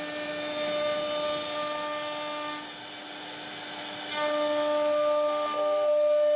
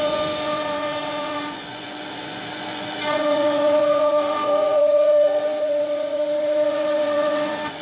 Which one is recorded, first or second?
first